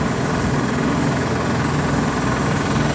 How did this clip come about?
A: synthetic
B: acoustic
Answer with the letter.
B